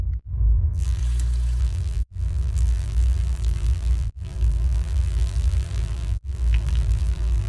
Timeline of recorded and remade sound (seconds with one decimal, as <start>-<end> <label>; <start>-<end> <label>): 0.0-1.0 remade; 1.0-1.6 recorded; 1.6-7.5 remade